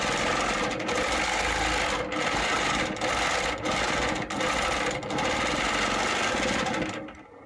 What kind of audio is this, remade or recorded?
recorded